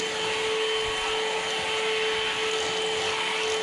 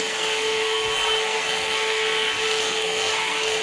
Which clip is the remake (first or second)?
second